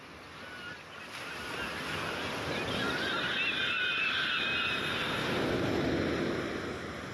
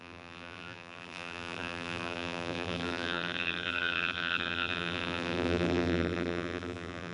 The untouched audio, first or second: first